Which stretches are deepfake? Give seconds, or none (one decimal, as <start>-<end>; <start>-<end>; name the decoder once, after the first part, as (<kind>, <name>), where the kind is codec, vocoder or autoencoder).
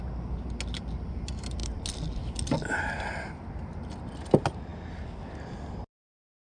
none